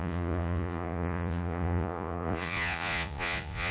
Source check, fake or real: fake